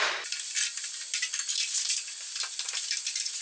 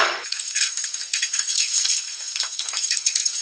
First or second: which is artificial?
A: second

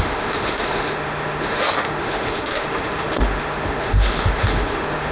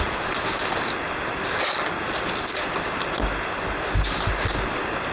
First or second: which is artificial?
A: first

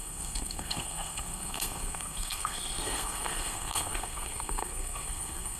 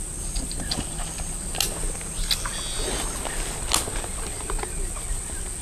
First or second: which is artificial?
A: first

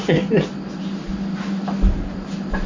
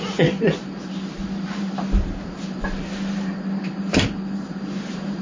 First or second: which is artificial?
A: second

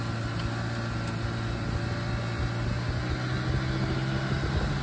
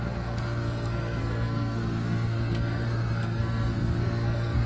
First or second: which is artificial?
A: second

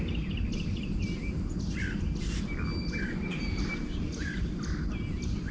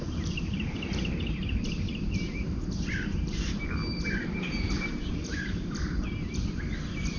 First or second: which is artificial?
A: second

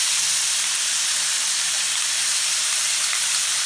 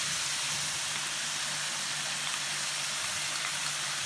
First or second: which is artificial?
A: first